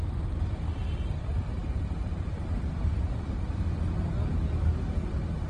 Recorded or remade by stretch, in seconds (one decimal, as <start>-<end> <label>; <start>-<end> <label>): 0.0-1.6 recorded; 1.6-3.6 remade; 3.6-5.5 recorded